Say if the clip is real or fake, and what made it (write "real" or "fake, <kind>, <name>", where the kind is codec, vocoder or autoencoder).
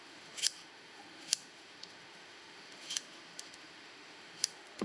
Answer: fake, autoencoder, DAC-VAE